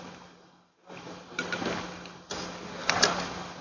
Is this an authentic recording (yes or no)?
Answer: yes